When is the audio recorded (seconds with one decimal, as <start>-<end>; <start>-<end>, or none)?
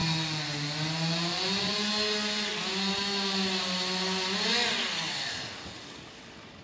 0.0-6.6